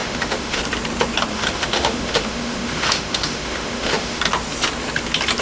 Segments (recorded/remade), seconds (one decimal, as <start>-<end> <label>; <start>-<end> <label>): 0.0-0.6 remade; 0.6-1.3 recorded; 1.3-4.2 remade; 4.2-5.4 recorded